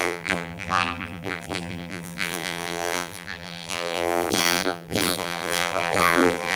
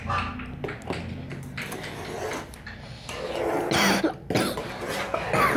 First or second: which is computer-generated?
first